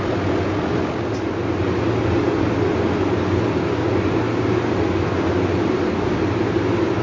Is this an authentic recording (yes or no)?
yes